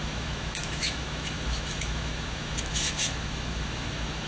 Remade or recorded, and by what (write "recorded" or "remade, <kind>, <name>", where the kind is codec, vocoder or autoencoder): remade, autoencoder, DAC-VAE